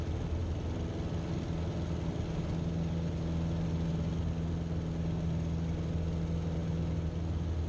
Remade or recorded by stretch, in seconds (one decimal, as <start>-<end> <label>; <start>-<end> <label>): 0.0-7.7 recorded